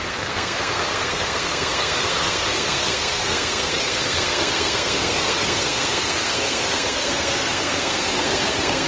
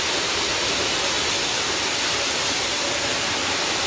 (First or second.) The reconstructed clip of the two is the first